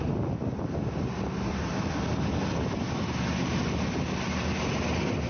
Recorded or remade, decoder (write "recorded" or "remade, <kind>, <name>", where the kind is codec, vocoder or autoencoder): recorded